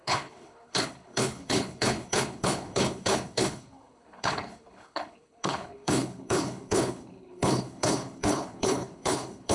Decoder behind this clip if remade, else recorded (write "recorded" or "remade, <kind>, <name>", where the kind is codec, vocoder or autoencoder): remade, codec, HILCodec